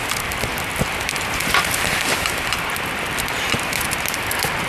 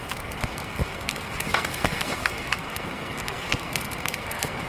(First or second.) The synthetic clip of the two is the second